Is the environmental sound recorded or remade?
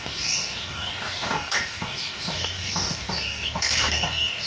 remade